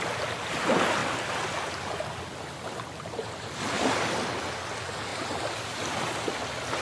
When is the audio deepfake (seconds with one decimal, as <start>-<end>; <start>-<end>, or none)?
none